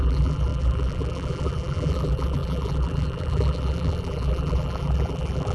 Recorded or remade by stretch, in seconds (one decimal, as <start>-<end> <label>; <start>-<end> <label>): 0.0-5.5 remade